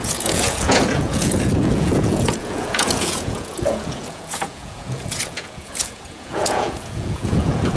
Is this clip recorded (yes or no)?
no